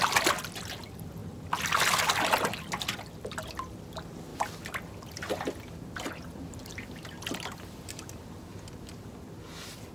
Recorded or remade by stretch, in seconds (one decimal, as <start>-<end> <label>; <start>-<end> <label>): 0.0-9.9 recorded